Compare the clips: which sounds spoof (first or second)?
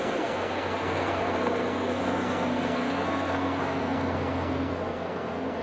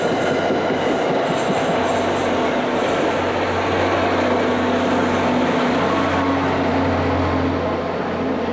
first